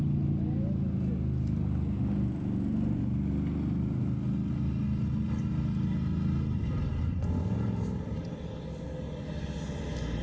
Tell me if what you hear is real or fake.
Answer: real